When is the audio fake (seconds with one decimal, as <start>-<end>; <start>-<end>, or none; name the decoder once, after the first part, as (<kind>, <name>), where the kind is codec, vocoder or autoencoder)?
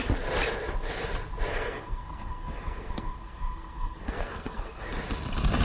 1.5-4.9 (codec, SNAC)